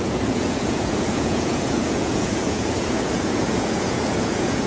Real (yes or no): no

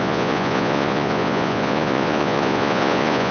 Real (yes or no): no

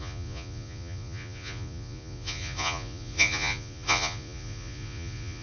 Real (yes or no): no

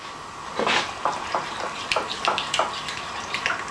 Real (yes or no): yes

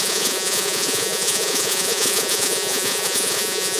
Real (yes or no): no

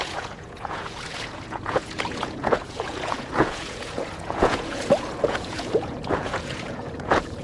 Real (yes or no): no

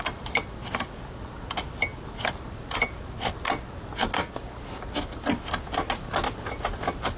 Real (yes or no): yes